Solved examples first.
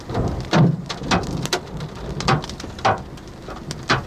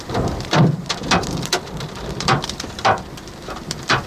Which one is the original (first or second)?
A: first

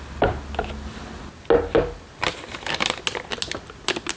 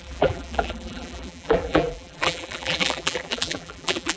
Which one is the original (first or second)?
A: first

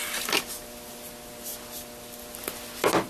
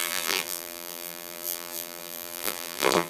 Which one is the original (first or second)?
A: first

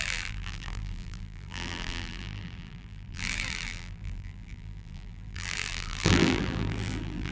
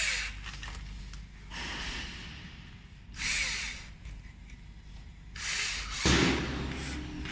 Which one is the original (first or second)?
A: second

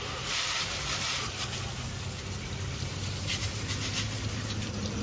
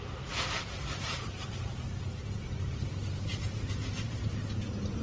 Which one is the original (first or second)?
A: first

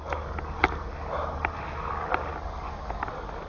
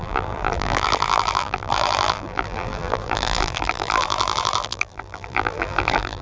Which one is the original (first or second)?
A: first